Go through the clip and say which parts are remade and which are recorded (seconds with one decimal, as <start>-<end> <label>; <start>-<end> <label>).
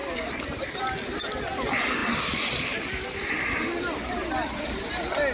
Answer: 0.0-5.3 recorded